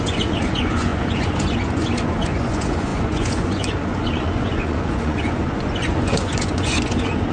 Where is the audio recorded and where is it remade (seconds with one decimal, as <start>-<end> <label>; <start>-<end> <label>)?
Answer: 0.0-7.3 remade